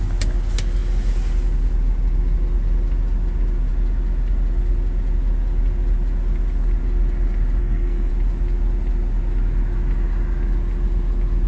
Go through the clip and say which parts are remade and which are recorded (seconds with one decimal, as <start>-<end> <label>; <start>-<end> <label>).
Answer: 0.0-7.6 recorded; 7.6-8.1 remade; 8.1-11.5 recorded